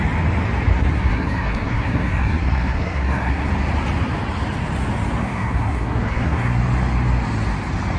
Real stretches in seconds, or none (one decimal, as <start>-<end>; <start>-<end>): 0.0-0.7; 3.5-5.2; 6.6-8.0

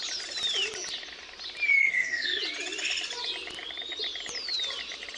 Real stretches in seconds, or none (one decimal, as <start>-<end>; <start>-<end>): 0.0-1.8; 2.4-5.2

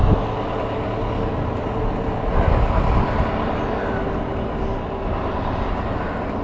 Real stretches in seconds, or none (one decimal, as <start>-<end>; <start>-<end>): 0.0-6.4

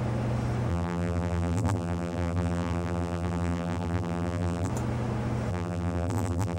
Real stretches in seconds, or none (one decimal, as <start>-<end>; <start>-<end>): 0.0-0.7; 4.7-5.5

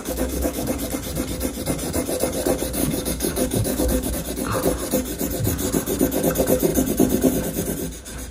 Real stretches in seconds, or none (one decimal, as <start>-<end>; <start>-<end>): 0.7-2.8; 4.1-8.3

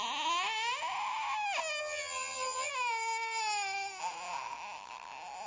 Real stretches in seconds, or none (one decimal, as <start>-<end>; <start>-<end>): 0.0-1.8; 2.7-5.5

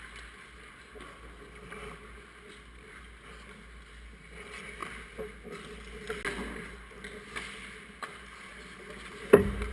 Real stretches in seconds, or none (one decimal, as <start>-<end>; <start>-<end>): 0.0-9.7